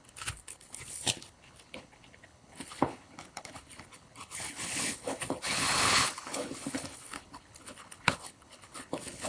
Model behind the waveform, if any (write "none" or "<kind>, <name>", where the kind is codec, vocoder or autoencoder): codec, HILCodec